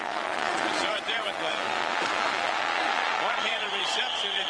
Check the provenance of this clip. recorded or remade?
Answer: remade